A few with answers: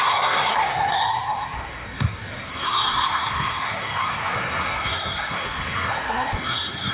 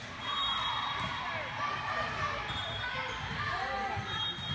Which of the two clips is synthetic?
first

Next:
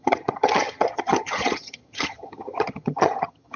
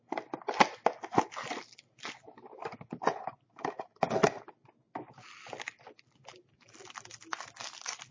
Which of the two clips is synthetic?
first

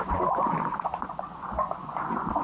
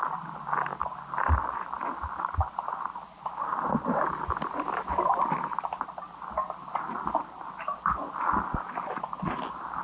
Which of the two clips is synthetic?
first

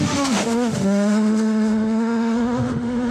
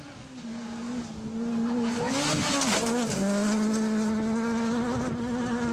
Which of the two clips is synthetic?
first